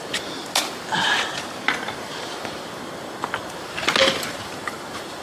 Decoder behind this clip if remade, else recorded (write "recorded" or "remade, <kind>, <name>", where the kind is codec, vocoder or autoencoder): recorded